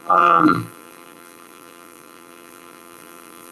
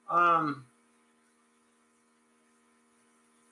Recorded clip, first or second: second